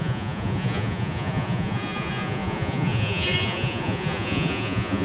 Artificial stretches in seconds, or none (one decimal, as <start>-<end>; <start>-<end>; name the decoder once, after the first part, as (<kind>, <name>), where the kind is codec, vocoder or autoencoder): 0.0-5.0 (vocoder, Vocos)